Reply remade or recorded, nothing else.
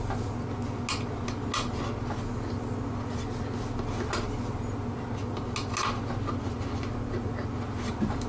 recorded